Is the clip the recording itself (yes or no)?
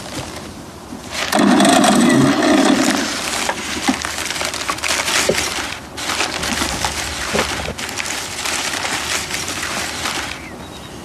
yes